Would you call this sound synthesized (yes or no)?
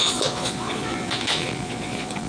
yes